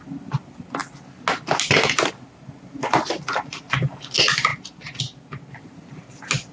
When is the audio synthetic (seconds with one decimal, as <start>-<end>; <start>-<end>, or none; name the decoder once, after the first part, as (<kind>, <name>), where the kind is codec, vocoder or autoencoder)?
none